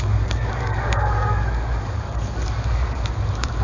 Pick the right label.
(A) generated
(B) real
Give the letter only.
A